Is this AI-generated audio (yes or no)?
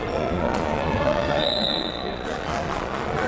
yes